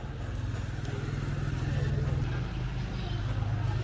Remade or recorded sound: recorded